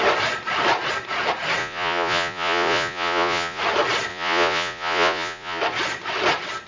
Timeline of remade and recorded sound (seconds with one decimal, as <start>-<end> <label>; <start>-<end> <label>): 0.0-1.6 recorded; 1.6-3.6 remade; 3.6-4.1 recorded; 4.1-5.6 remade; 5.6-6.7 recorded